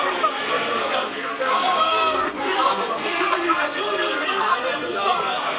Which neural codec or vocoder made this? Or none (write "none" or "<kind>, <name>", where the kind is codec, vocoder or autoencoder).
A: codec, SNAC